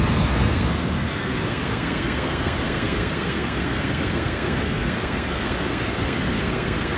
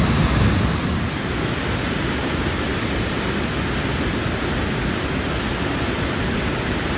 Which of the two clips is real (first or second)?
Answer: second